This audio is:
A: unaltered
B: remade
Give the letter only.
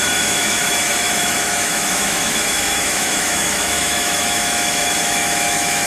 B